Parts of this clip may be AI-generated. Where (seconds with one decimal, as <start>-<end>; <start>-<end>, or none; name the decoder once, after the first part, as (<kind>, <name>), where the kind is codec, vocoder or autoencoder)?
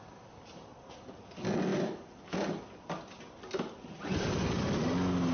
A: none